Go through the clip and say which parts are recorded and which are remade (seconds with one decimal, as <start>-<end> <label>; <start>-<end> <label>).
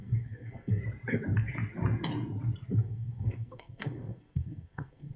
0.0-0.8 remade; 0.8-2.7 recorded; 2.7-5.2 remade